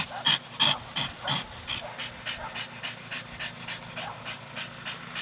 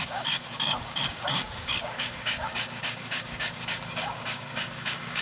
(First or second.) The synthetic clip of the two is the second